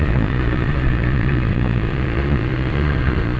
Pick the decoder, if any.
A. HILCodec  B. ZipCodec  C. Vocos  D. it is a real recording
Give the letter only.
C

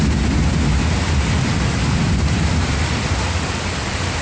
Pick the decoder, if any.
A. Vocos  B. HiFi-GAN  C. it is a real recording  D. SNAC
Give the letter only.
C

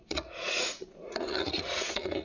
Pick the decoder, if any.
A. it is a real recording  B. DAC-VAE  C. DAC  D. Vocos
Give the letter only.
D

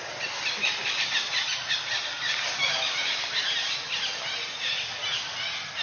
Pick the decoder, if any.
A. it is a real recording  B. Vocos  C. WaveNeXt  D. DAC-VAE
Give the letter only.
A